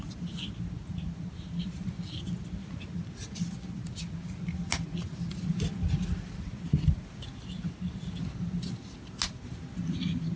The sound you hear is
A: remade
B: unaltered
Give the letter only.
B